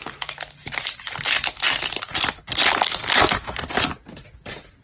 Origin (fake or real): real